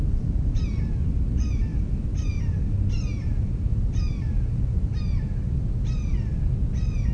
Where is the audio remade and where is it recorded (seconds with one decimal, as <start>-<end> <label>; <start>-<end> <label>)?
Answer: 0.0-7.1 recorded